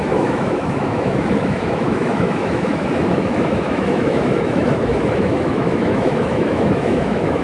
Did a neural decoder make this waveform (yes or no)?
yes